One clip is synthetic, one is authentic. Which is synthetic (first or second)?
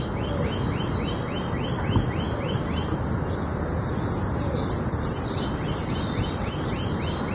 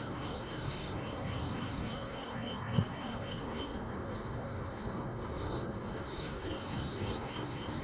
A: second